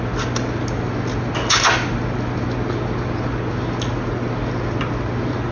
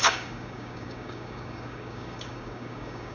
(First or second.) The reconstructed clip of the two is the second